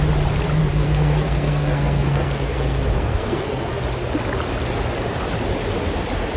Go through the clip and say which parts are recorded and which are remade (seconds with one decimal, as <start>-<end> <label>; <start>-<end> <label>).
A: 0.0-0.6 recorded; 0.6-3.8 remade; 3.8-6.4 recorded